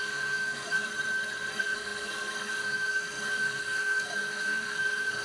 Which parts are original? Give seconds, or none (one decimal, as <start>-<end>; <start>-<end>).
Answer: 0.9-1.5